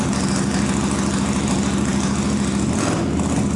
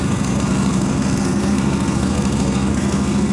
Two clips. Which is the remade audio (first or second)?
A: second